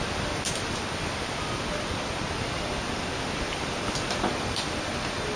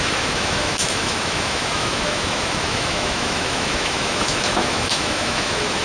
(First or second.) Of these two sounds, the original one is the first